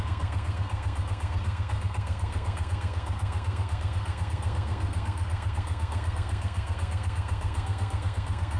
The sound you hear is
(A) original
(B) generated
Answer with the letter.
B